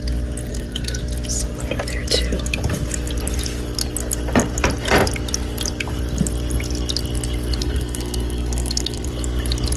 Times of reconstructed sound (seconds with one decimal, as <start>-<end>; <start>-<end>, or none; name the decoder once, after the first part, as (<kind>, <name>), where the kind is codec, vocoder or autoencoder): 0.5-1.0 (codec, SNAC); 7.6-9.1